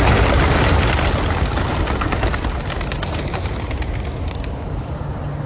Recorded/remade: recorded